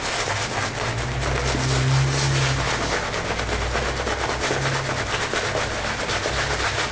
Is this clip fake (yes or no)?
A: no